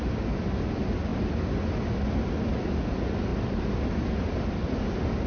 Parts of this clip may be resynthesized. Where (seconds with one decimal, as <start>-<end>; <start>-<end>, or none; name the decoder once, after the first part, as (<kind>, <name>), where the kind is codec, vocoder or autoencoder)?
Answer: none